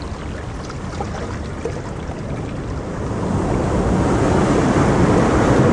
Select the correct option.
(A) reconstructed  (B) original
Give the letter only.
B